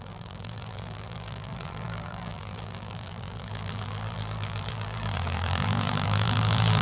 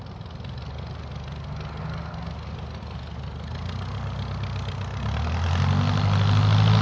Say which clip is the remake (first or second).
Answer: first